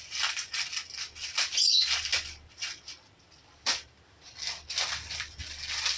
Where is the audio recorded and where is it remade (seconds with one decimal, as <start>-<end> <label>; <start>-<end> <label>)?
0.0-6.0 remade